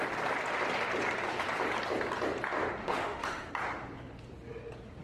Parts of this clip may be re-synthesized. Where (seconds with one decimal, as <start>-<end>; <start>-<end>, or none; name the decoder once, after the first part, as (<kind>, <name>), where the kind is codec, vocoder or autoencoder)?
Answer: 2.8-3.5 (autoencoder, DAC-VAE)